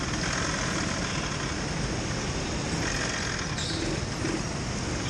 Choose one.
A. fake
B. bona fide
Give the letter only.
B